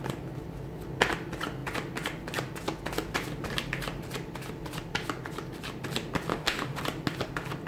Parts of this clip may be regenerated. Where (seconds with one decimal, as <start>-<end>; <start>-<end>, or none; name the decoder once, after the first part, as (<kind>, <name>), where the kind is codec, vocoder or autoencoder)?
6.3-6.8 (autoencoder, DAC-VAE)